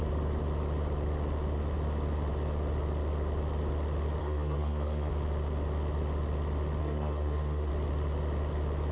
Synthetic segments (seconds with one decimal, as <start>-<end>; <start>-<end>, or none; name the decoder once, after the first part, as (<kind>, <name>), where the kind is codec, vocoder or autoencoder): 4.2-5.1 (codec, SNAC); 6.8-7.7